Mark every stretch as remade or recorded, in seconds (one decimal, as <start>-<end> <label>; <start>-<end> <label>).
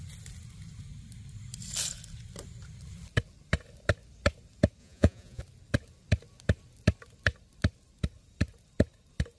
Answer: 0.0-4.8 recorded; 4.8-5.4 remade; 5.4-9.4 recorded